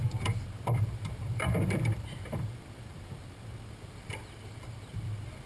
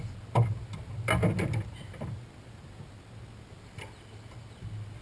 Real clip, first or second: second